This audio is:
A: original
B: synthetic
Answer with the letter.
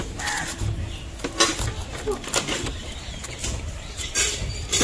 A